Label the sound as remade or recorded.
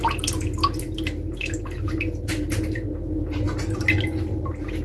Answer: recorded